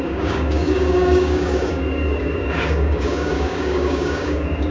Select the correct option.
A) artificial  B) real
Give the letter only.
A